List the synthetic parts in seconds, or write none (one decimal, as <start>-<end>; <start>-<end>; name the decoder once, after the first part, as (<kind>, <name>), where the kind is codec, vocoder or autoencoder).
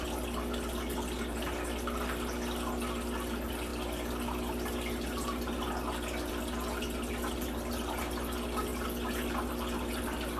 none